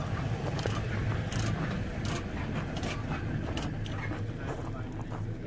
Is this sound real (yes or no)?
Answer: yes